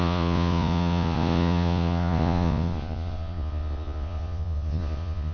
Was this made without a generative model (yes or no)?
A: no